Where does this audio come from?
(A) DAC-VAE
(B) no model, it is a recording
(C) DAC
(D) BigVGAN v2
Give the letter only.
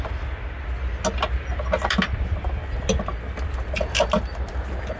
B